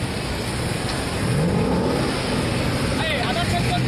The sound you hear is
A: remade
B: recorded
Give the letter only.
B